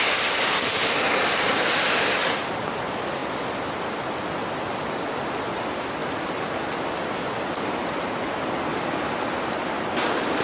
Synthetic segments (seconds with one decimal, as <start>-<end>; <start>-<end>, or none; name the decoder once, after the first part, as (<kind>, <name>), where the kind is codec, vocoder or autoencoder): 8.7-9.7 (vocoder, BigVGAN v2)